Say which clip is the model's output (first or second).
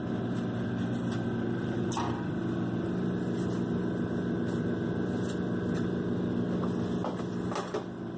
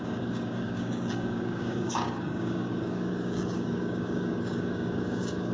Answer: second